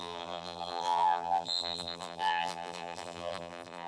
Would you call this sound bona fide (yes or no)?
no